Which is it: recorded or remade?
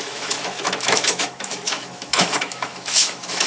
remade